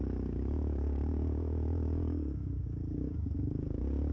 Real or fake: fake